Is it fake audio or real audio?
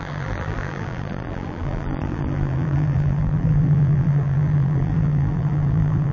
fake